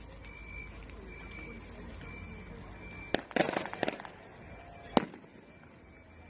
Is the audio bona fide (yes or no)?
yes